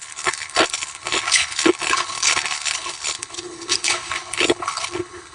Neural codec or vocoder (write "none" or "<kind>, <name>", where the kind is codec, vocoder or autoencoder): codec, HILCodec